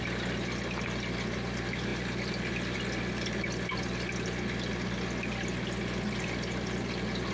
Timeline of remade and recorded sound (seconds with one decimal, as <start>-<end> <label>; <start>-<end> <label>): 0.0-7.3 recorded